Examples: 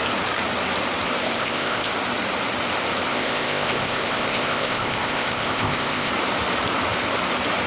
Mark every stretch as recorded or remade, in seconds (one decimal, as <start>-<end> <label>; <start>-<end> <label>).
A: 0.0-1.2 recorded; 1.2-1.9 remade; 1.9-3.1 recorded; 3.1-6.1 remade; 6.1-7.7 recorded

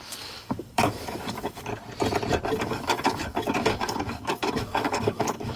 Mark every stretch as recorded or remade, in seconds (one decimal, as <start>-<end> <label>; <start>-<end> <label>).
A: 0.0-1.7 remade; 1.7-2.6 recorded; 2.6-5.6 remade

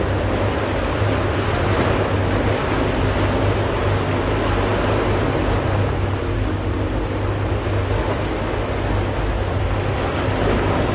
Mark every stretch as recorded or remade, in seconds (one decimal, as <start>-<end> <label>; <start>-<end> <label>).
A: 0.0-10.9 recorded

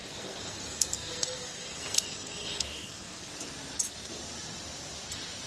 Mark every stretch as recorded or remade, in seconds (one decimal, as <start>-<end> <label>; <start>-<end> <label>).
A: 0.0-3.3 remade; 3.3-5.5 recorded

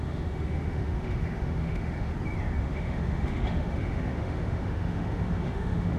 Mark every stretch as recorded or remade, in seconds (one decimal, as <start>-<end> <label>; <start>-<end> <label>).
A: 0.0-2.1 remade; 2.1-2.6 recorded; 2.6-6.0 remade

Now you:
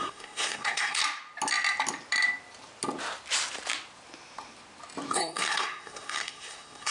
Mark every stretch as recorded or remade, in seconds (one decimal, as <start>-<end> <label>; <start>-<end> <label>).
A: 0.0-1.0 remade; 1.0-5.1 recorded; 5.1-6.9 remade